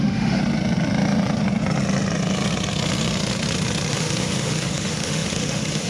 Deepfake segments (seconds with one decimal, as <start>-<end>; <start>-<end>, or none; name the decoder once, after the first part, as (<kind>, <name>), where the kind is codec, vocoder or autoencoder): 0.0-0.4 (autoencoder, DAC-VAE); 3.9-5.9